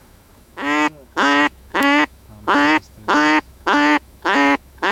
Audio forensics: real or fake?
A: fake